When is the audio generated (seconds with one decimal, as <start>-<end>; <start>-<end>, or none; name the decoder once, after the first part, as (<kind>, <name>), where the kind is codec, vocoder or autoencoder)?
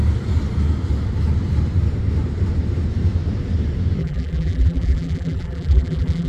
4.0-6.3 (vocoder, BigVGAN v2)